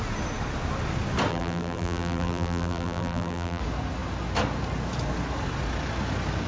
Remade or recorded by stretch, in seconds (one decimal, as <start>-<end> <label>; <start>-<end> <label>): 0.0-1.3 recorded; 1.3-3.6 remade; 3.6-6.5 recorded